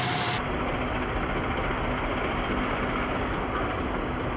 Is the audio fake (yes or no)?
no